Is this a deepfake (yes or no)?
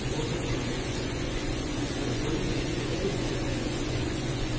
yes